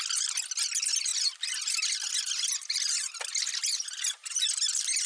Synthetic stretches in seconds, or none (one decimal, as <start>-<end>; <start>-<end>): none